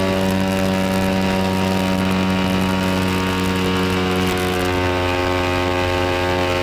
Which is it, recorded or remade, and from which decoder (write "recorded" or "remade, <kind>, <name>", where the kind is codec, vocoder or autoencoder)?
recorded